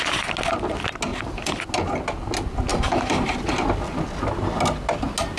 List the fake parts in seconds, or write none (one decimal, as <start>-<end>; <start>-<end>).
1.1-1.6; 2.7-3.5